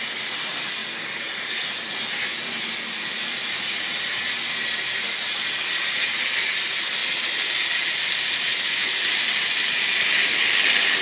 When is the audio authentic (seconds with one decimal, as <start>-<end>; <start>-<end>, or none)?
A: 0.8-5.6; 7.0-8.1